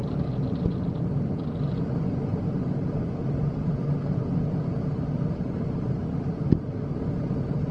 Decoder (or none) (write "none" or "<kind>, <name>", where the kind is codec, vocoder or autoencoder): none